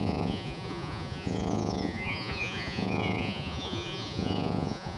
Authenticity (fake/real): fake